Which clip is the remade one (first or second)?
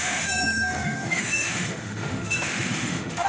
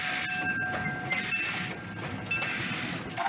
first